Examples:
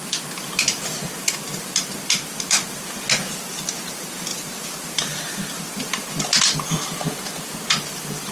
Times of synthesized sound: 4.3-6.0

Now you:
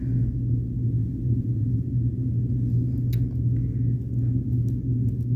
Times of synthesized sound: 1.0-1.9

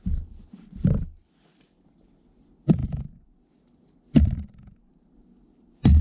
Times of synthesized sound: none

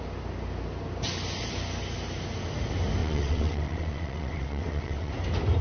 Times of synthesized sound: 3.0-5.1